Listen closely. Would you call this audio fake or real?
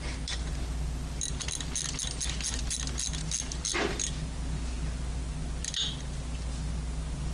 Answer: real